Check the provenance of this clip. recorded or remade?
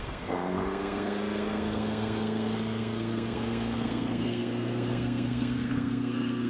remade